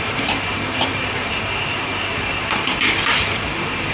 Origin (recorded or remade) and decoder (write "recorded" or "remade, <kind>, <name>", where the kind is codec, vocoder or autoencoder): remade, vocoder, BigVGAN v2